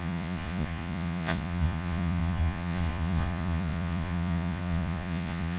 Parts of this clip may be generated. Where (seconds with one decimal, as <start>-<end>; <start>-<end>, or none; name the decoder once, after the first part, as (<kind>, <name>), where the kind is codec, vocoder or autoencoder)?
0.0-5.6 (vocoder, Vocos)